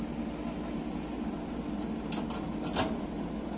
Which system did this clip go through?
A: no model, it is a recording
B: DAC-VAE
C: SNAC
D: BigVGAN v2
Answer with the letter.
A